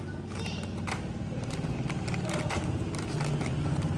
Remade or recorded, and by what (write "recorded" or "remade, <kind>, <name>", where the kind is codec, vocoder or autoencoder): recorded